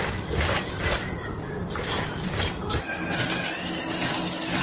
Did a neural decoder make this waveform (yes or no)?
no